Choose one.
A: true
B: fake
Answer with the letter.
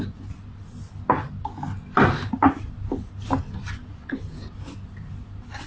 A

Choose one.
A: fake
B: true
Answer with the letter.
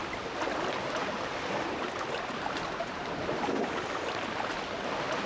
B